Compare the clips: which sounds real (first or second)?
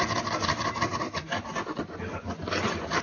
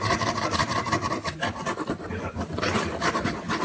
first